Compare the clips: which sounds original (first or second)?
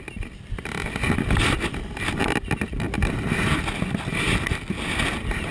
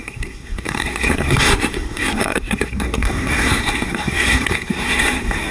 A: first